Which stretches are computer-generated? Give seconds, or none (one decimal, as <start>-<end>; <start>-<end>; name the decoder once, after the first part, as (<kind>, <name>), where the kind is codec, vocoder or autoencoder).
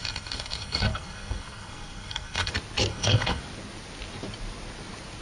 0.0-2.5 (codec, SNAC); 2.9-3.4